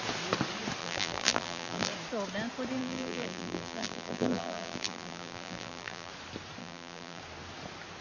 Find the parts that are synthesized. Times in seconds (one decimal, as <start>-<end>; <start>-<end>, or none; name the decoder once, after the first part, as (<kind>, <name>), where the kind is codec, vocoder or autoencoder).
0.8-1.9 (vocoder, BigVGAN v2); 2.8-6.1; 6.6-7.2